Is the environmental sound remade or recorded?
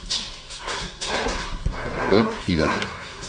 remade